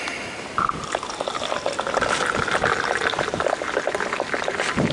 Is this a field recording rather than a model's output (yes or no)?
yes